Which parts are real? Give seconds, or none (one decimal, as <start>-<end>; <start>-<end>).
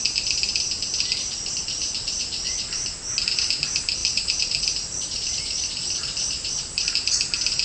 0.0-4.0; 6.9-7.6